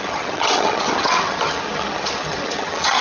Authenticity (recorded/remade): remade